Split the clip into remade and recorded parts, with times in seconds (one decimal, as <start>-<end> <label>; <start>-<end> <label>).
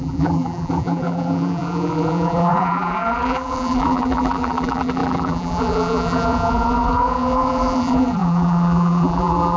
0.0-9.6 remade